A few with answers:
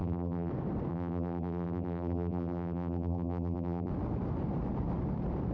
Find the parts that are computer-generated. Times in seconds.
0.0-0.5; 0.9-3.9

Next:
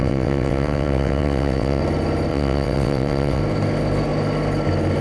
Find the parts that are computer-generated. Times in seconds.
0.0-1.8; 2.3-3.4

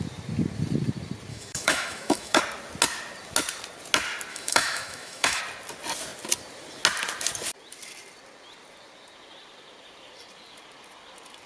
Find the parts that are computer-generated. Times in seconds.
1.3-2.4; 4.3-5.4

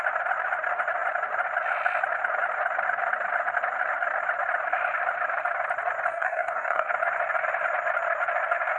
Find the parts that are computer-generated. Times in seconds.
6.1-6.9

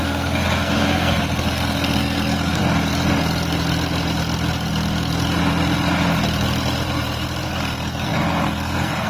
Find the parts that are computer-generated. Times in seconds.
0.0-2.6; 7.5-9.1

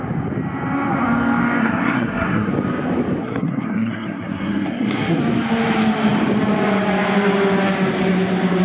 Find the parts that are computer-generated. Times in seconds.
1.6-2.5; 3.2-5.2